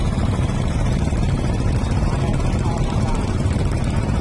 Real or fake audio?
fake